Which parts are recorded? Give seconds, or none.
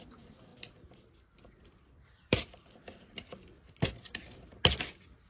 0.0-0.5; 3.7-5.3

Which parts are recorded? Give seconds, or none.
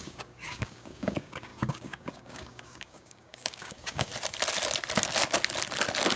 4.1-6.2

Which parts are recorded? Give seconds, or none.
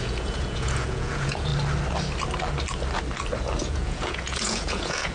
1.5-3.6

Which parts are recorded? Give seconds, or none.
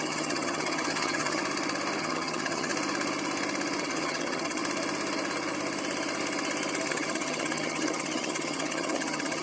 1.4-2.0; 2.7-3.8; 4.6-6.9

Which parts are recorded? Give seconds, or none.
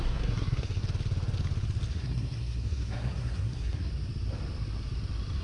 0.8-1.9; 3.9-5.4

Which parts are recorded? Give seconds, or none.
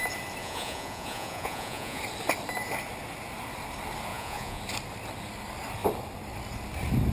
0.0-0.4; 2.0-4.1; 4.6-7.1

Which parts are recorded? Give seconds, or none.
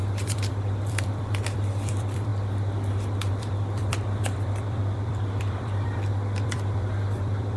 2.3-3.3